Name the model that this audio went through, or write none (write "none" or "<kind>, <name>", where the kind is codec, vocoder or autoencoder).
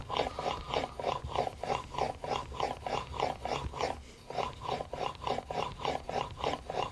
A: none